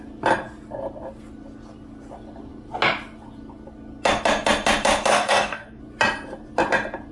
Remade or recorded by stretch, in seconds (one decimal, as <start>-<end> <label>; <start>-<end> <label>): 0.0-5.1 recorded; 5.1-5.8 remade; 5.8-7.1 recorded